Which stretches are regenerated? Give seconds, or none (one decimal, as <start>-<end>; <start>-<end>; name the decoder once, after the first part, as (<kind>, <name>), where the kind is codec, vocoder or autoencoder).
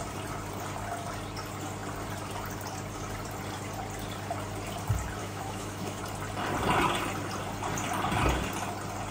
5.2-6.0 (autoencoder, DAC-VAE)